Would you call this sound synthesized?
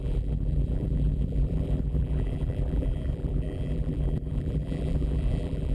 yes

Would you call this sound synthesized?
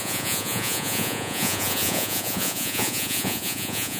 yes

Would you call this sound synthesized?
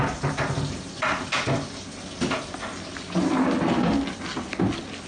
no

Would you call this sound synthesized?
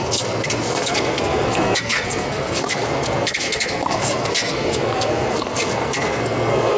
yes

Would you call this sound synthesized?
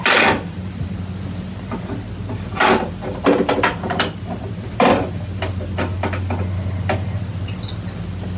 no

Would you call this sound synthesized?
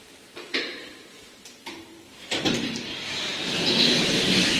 yes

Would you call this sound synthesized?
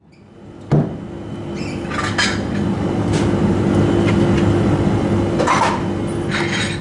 no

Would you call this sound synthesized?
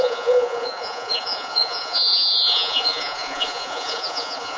yes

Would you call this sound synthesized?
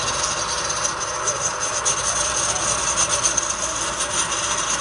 no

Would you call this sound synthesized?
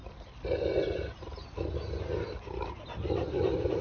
no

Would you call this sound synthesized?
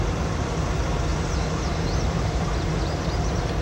yes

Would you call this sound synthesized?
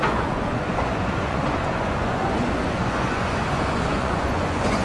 yes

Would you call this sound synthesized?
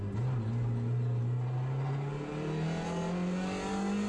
no